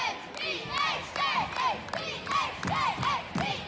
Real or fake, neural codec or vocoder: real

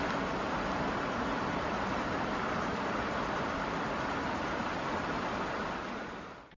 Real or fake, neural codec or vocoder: real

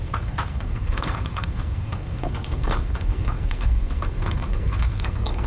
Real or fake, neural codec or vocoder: fake, codec, SNAC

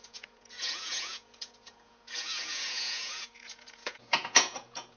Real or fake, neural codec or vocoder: fake, vocoder, Vocos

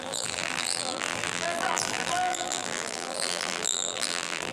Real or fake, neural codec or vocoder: fake, vocoder, BigVGAN v2